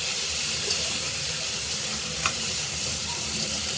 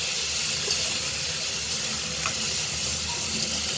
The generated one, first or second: first